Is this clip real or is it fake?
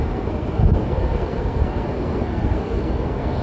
fake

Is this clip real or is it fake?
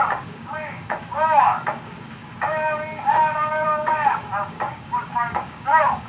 fake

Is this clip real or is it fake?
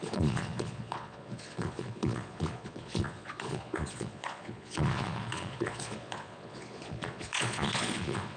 fake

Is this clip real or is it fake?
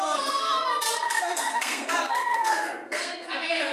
fake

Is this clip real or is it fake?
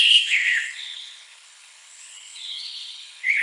fake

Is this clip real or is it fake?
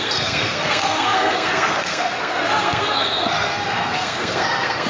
fake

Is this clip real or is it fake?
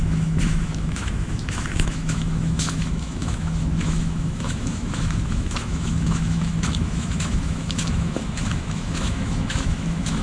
fake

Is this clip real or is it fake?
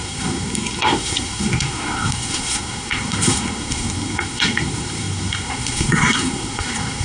fake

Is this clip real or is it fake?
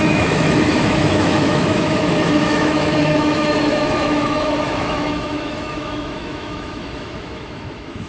fake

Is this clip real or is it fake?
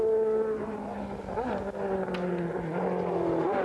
real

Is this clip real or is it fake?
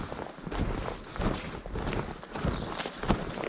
real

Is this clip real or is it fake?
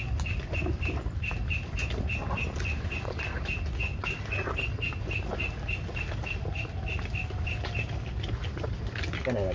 real